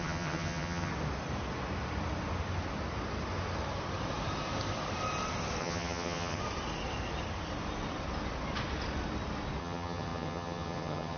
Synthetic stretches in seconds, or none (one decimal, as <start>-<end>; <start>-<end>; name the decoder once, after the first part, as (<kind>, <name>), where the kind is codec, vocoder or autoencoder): 0.0-0.9 (vocoder, HiFi-GAN); 5.6-6.4; 9.6-11.2